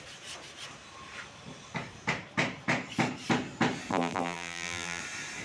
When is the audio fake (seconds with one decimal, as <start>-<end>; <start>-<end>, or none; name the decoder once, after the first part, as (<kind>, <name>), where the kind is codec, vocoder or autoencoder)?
3.9-5.0 (vocoder, BigVGAN v2)